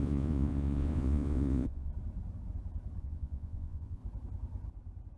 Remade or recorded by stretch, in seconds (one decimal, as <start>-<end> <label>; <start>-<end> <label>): 0.0-1.9 remade; 1.9-3.0 recorded; 3.0-4.0 remade; 4.0-5.2 recorded